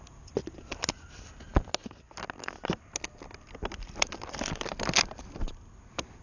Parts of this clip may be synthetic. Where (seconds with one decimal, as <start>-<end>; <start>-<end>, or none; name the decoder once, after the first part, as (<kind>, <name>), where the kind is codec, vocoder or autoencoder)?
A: none